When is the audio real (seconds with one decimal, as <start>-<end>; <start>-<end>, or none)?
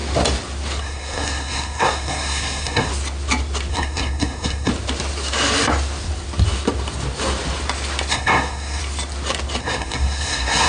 0.0-0.8; 2.9-3.7; 4.7-8.1; 8.8-9.6